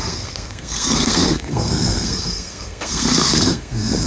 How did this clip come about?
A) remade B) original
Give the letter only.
A